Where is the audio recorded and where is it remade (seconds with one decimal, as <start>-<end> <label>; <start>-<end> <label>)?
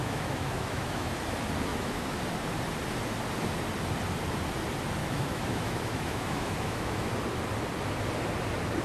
0.0-1.1 remade; 1.1-1.7 recorded; 1.7-2.2 remade; 2.2-5.0 recorded; 5.0-7.1 remade; 7.1-8.8 recorded